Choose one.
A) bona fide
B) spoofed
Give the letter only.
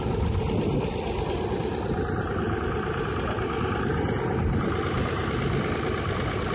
A